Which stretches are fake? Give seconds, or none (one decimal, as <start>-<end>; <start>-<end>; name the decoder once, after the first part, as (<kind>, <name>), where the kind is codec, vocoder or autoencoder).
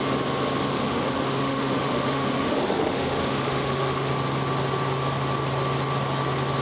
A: 0.7-4.1 (autoencoder, DAC-VAE)